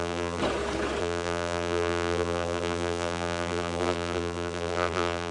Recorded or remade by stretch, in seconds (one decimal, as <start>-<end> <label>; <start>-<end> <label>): 0.0-0.4 remade; 0.4-1.0 recorded; 1.0-5.3 remade